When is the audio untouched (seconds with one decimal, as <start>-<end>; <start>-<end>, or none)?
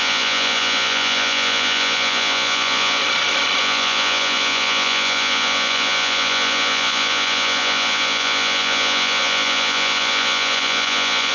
3.0-3.6